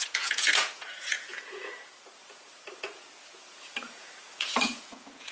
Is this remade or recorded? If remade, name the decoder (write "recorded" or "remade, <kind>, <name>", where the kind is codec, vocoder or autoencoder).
remade, vocoder, Vocos